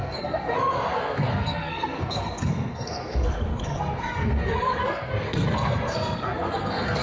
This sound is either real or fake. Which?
fake